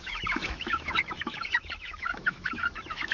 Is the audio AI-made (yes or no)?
yes